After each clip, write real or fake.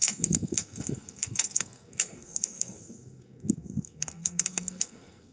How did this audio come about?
fake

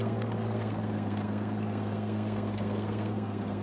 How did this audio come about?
fake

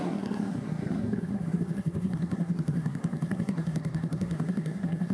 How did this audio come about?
fake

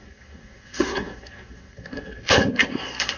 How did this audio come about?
fake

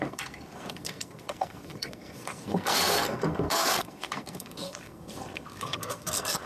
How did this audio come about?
fake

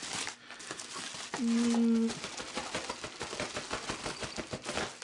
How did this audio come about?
real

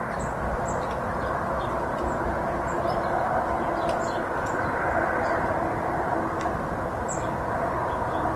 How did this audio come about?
real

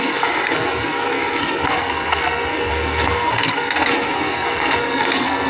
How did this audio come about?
fake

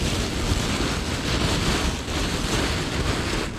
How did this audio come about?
real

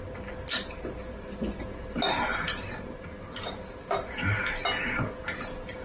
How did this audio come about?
real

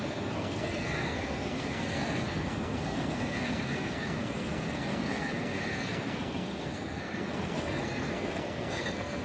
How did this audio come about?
fake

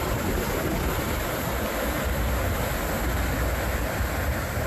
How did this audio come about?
real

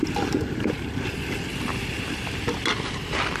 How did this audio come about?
real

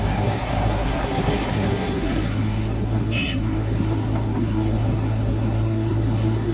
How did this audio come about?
fake